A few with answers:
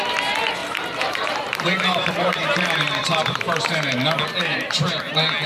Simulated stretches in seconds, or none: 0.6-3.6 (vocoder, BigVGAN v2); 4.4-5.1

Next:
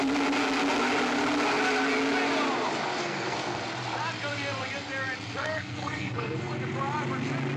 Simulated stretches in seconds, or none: 3.0-3.6 (codec, SNAC); 5.4-6.5

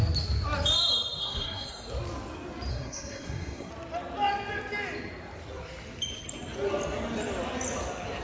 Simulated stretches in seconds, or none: 1.2-1.9 (codec, SNAC); 2.7-3.7

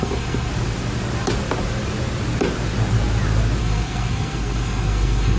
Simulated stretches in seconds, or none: 0.0-0.5 (codec, SNAC); 3.6-5.4